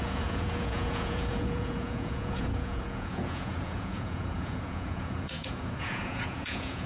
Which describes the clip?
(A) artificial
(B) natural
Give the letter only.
A